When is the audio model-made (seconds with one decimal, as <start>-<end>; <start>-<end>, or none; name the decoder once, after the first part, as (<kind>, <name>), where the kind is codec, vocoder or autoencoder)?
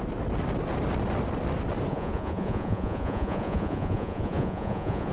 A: 1.9-5.1 (vocoder, Vocos)